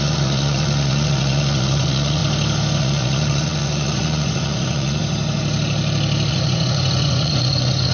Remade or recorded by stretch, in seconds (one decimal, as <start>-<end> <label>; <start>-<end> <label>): 0.0-2.2 remade; 2.2-2.8 recorded; 2.8-5.0 remade; 5.0-6.3 recorded; 6.3-7.9 remade